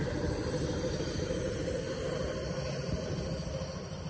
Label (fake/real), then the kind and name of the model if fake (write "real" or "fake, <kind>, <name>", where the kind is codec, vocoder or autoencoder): real